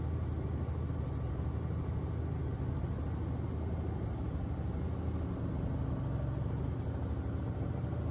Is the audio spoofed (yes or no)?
no